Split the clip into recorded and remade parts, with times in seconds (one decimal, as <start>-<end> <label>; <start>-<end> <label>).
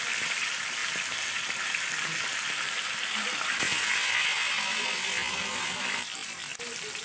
0.0-7.0 recorded